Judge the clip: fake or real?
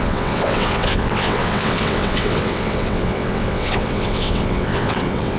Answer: fake